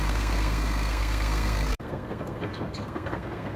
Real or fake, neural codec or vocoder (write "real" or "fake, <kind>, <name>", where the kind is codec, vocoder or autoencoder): fake, codec, SNAC